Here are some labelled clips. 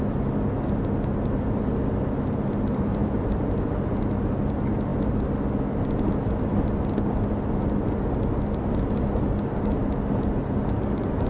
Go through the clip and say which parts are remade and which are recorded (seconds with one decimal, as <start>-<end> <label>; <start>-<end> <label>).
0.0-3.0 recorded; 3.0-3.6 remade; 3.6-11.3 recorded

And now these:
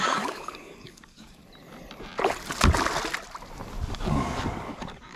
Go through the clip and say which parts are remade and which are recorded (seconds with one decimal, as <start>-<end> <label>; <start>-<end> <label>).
0.0-1.4 remade; 1.4-3.9 recorded; 3.9-5.2 remade

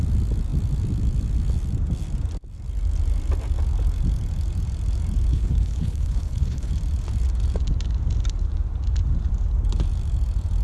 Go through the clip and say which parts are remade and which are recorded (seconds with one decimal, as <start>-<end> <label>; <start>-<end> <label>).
0.0-5.3 recorded; 5.3-6.7 remade; 6.7-10.6 recorded